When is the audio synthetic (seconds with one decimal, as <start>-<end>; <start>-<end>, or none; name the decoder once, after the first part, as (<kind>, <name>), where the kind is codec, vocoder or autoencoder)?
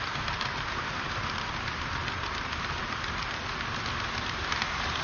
0.0-2.0 (vocoder, BigVGAN v2); 4.1-5.0